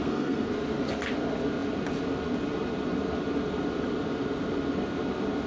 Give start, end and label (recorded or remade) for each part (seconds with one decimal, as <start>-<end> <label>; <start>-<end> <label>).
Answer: 0.0-0.5 remade; 0.5-5.5 recorded

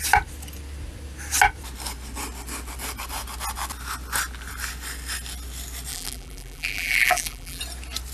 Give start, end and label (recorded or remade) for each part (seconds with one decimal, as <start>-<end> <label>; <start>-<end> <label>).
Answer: 0.0-5.9 recorded; 5.9-7.6 remade; 7.6-8.1 recorded

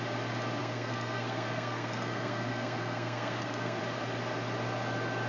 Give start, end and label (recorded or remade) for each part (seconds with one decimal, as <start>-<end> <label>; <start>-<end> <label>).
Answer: 0.0-0.6 recorded; 0.6-3.8 remade; 3.8-5.3 recorded

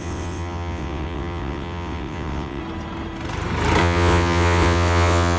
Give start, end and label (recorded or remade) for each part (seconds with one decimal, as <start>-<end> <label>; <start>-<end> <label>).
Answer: 0.0-2.6 remade; 2.6-3.8 recorded; 3.8-5.4 remade

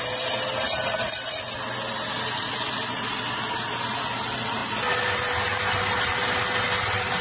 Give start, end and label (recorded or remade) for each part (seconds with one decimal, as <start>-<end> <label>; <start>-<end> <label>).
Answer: 0.0-7.2 recorded

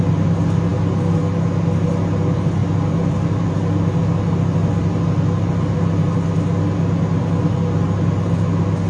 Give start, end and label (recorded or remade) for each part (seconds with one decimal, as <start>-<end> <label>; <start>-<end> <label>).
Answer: 0.0-8.9 recorded

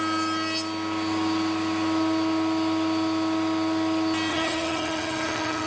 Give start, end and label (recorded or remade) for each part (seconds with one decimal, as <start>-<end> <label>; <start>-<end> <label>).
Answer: 0.0-4.3 recorded; 4.3-5.7 remade

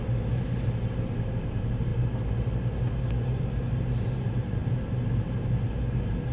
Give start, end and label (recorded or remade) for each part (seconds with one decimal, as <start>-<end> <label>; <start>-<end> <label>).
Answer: 0.0-6.3 recorded